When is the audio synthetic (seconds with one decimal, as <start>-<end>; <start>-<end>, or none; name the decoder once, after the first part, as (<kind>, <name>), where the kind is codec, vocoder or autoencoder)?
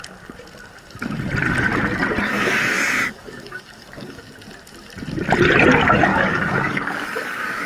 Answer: 2.2-4.2 (codec, DAC); 6.1-7.7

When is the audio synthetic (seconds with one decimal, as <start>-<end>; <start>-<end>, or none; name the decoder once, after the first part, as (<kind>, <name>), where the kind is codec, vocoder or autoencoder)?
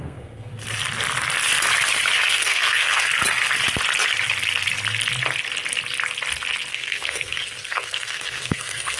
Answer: 0.0-0.5 (codec, SNAC); 2.3-3.1; 6.7-9.0